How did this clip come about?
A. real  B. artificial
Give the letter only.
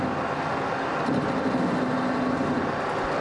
A